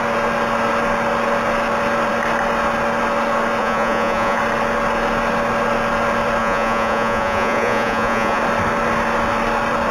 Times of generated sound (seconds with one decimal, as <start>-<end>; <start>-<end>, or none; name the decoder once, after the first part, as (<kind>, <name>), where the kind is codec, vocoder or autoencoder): 3.6-4.4 (vocoder, Vocos); 6.4-8.4